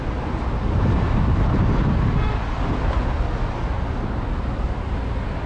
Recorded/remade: recorded